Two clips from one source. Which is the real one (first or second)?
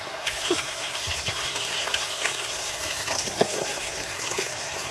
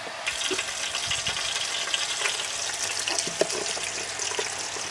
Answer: second